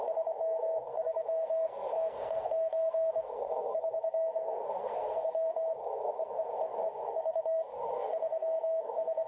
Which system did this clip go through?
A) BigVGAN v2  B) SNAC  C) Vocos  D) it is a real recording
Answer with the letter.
B